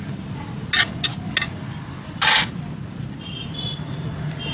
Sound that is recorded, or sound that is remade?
recorded